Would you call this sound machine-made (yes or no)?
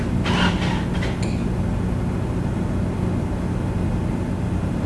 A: no